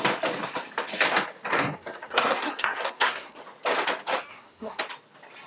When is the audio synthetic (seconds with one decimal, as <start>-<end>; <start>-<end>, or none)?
1.5-3.4; 4.3-4.8